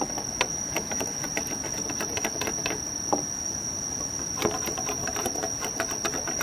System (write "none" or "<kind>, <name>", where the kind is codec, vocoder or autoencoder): none